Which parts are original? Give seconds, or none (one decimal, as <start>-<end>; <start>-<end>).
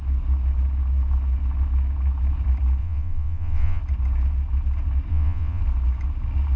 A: 0.0-2.8; 3.8-5.1; 5.6-6.6